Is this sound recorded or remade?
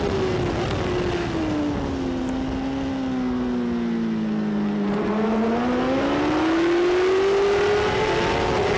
recorded